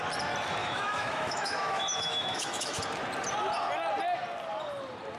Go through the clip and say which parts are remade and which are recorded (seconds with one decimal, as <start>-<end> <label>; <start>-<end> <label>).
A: 0.0-0.6 recorded; 0.6-2.8 remade; 2.8-5.2 recorded

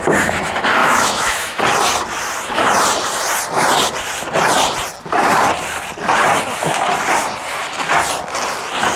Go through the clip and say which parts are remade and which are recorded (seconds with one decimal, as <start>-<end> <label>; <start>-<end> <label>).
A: 0.0-0.8 recorded; 0.8-1.6 remade; 1.6-9.0 recorded